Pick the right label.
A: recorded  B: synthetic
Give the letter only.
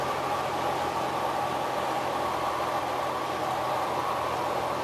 A